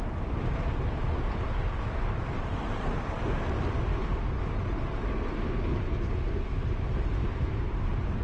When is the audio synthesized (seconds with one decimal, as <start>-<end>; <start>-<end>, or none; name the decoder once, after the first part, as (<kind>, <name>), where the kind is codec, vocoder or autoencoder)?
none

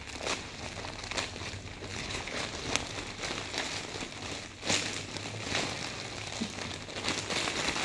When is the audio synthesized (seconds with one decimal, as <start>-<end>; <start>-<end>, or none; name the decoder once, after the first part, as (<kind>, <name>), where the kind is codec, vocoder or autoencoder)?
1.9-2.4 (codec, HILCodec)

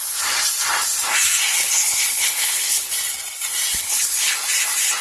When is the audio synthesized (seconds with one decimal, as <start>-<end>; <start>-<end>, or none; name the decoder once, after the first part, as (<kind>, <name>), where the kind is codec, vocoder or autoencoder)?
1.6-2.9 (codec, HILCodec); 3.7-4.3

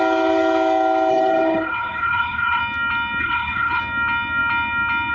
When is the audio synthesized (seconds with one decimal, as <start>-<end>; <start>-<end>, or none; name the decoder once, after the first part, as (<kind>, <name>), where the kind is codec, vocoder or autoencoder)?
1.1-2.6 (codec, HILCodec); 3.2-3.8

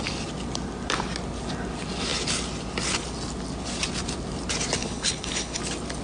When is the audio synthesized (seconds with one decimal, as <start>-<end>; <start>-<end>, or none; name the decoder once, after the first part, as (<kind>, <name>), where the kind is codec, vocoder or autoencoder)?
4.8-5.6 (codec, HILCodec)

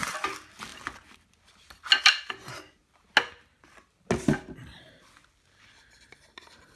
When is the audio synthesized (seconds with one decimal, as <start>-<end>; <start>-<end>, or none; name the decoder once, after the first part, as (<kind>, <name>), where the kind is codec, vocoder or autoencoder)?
none